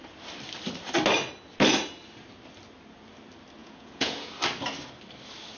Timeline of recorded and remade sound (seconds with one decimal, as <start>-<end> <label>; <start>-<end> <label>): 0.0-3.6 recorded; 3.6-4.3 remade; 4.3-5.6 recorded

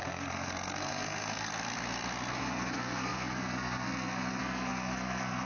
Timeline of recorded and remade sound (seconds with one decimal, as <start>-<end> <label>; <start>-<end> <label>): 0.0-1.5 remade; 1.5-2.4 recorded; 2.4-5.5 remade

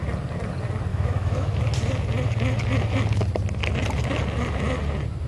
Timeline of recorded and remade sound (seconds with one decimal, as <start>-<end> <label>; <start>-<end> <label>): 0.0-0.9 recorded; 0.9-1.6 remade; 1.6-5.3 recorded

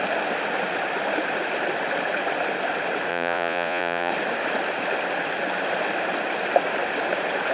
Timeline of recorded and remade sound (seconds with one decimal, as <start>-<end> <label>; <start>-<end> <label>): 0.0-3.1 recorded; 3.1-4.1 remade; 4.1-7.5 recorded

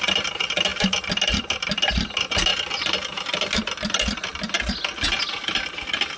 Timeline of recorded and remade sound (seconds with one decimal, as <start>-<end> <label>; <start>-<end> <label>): 0.0-6.2 recorded

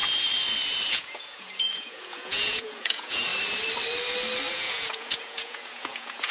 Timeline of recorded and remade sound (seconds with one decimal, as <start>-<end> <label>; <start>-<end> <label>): 0.0-0.9 recorded; 0.9-3.3 remade; 3.3-4.5 recorded; 4.5-6.3 remade

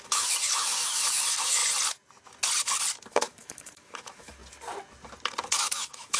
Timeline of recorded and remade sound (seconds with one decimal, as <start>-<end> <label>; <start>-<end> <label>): 0.0-1.6 remade; 1.6-3.1 recorded; 3.1-4.4 remade; 4.4-5.6 recorded; 5.6-6.2 remade